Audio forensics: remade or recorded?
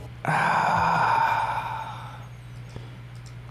recorded